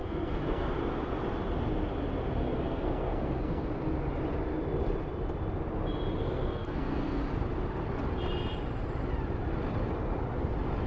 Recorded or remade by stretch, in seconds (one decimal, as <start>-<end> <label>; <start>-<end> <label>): 0.0-0.7 remade; 0.7-2.4 recorded; 2.4-3.7 remade; 3.7-6.2 recorded; 6.2-7.2 remade; 7.2-10.9 recorded